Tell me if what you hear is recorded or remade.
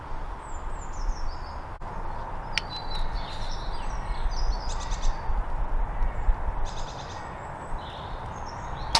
recorded